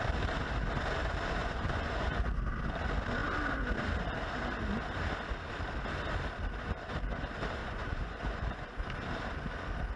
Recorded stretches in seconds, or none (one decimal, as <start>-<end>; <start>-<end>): 0.0-1.4; 2.3-7.6; 8.9-10.0